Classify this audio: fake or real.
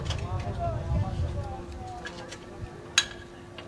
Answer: real